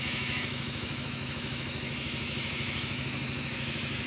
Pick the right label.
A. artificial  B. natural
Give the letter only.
A